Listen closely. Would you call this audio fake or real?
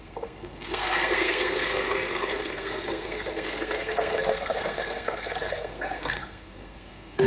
fake